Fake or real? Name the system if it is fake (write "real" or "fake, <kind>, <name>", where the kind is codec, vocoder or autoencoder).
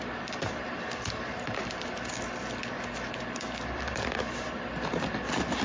real